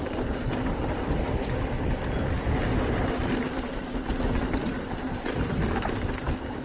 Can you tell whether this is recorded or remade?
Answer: recorded